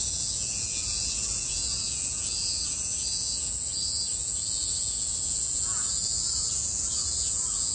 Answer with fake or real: fake